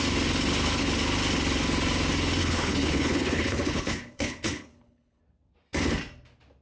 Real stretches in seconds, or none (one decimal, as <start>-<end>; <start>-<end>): 0.0-2.4; 5.2-6.6